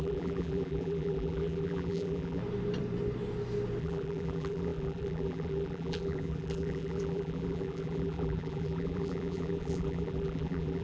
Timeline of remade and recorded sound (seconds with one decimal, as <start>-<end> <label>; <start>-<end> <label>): 0.0-2.4 remade; 2.4-3.8 recorded; 3.8-10.8 remade